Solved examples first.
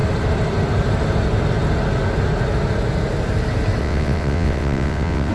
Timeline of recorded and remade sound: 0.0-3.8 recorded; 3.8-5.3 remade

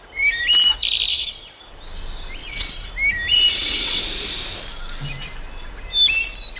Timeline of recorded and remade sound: 0.0-1.1 recorded; 1.1-1.6 remade; 1.6-2.4 recorded; 2.4-2.9 remade; 2.9-3.3 recorded; 3.3-4.0 remade; 4.0-6.6 recorded

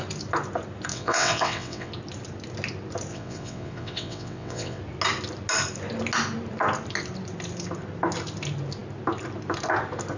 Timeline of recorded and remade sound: 0.0-0.9 recorded; 0.9-1.9 remade; 1.9-3.1 recorded; 3.1-4.8 remade; 4.8-10.2 recorded

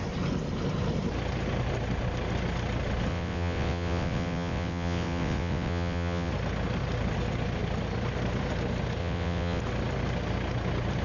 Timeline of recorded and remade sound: 0.0-3.1 recorded; 3.1-6.3 remade; 6.3-9.0 recorded; 9.0-9.6 remade; 9.6-11.0 recorded

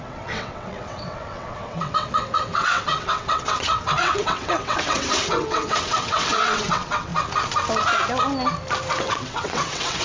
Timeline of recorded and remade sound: 0.0-7.1 remade; 7.1-9.0 recorded; 9.0-10.0 remade

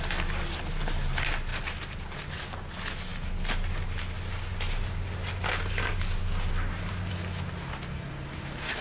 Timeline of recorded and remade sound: 0.0-8.8 recorded